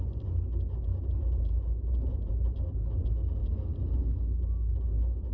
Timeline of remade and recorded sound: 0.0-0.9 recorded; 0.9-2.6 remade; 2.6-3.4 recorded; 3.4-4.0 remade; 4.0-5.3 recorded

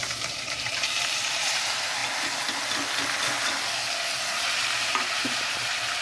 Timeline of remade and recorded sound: 0.0-2.0 remade; 2.0-4.6 recorded; 4.6-6.0 remade

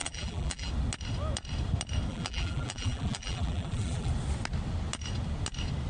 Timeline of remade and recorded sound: 0.0-0.7 remade; 0.7-2.1 recorded; 2.1-4.1 remade; 4.1-5.9 recorded

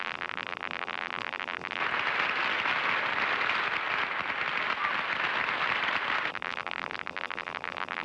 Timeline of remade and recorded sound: 0.0-1.8 remade; 1.8-6.3 recorded; 6.3-8.0 remade

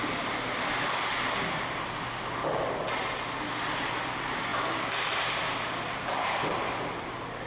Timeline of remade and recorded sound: 0.0-7.5 recorded

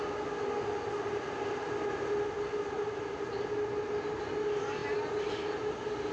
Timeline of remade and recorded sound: 0.0-6.1 recorded